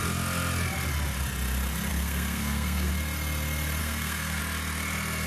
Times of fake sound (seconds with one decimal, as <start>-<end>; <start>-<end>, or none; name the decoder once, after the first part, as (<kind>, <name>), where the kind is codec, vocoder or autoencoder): 1.9-2.9 (codec, SNAC); 3.8-4.4